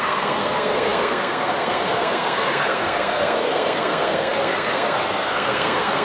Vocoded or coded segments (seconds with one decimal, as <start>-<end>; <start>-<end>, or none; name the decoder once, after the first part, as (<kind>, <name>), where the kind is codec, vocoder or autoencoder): 0.0-6.0 (codec, SNAC)